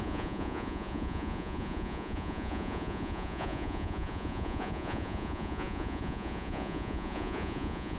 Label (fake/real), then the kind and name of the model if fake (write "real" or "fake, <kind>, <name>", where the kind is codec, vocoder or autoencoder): fake, vocoder, Vocos